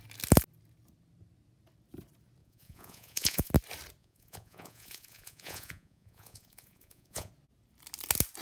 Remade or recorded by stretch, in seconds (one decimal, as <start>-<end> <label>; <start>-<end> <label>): 0.0-2.4 recorded; 2.4-3.5 remade; 3.5-4.0 recorded; 4.0-7.3 remade; 7.3-8.4 recorded